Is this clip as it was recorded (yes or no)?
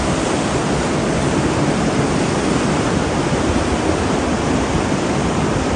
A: yes